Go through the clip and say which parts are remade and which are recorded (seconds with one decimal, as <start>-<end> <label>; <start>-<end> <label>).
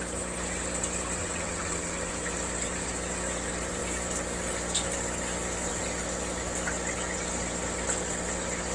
0.0-1.2 recorded; 1.2-2.1 remade; 2.1-8.7 recorded